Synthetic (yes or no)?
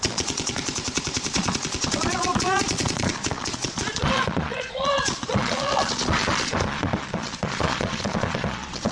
yes